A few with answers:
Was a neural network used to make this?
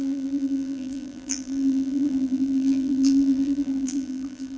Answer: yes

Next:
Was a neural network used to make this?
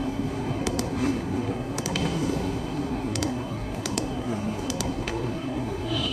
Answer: yes